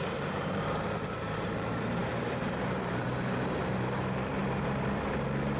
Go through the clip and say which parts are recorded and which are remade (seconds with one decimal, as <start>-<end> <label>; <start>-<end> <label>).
0.0-4.4 remade; 4.4-5.6 recorded